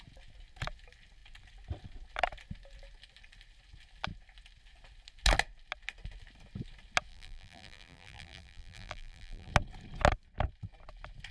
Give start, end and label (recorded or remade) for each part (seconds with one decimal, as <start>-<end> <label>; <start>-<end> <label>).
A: 0.0-7.1 recorded; 7.1-9.5 remade; 9.5-11.3 recorded